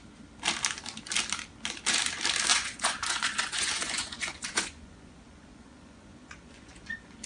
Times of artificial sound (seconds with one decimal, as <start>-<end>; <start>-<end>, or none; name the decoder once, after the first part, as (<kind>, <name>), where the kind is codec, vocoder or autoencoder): 2.5-7.3 (vocoder, Vocos)